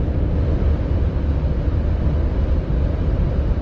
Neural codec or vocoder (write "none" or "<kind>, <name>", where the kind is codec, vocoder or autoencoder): none